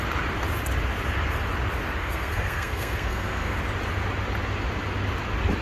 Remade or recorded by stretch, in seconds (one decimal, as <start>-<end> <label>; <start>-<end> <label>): 0.0-2.0 recorded; 2.0-3.6 remade; 3.6-5.6 recorded